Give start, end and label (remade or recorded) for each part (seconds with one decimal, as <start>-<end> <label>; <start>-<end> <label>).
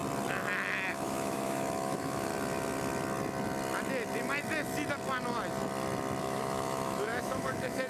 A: 0.0-0.9 recorded; 0.9-2.3 remade; 2.3-6.2 recorded; 6.2-7.9 remade